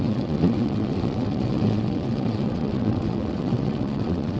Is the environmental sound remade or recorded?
remade